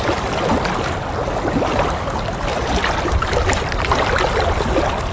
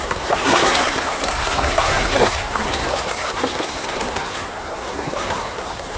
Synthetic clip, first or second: second